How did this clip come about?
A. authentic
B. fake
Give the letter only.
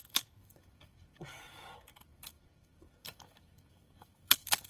B